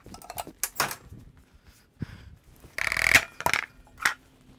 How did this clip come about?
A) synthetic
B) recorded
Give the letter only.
B